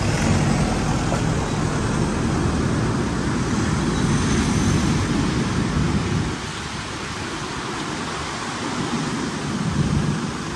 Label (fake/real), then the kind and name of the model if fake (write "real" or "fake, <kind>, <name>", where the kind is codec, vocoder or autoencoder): real